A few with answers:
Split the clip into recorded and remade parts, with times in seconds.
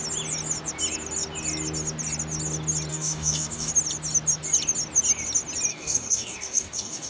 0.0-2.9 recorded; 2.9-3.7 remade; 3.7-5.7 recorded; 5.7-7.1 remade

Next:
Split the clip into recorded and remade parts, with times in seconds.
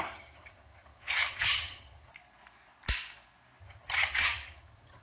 0.0-2.1 remade; 2.1-3.6 recorded; 3.6-5.0 remade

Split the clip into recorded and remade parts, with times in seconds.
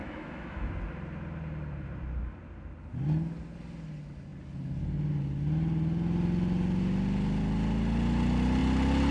0.0-0.7 remade; 0.7-9.1 recorded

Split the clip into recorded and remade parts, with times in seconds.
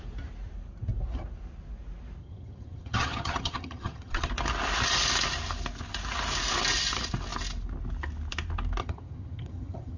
0.0-2.2 recorded; 2.2-4.3 remade; 4.3-8.8 recorded; 8.8-10.0 remade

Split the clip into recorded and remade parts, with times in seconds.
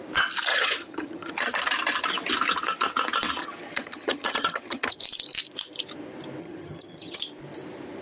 0.0-0.5 recorded; 0.5-1.3 remade; 1.3-3.4 recorded; 3.4-5.0 remade; 5.0-6.4 recorded; 6.4-7.2 remade; 7.2-8.0 recorded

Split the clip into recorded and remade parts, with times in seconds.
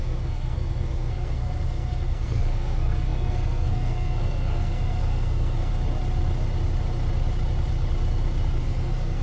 0.0-5.7 remade; 5.7-8.6 recorded; 8.6-9.2 remade